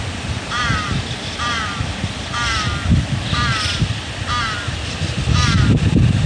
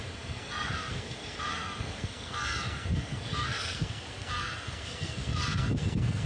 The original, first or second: first